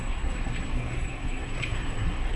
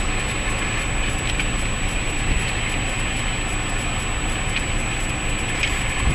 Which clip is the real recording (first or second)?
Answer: second